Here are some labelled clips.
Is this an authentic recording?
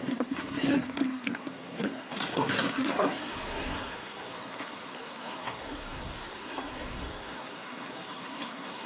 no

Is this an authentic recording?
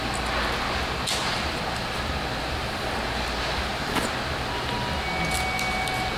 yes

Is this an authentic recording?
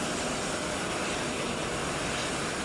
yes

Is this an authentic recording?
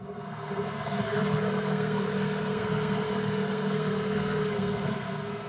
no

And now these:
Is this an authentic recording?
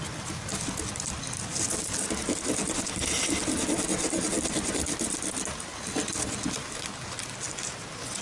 yes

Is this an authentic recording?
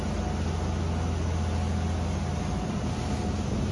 yes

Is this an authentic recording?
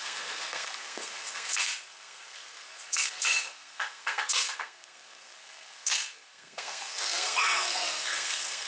no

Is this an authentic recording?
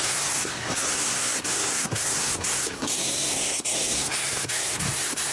no